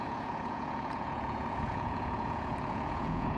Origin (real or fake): fake